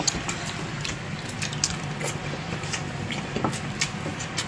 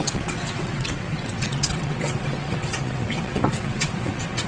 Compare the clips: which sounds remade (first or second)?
second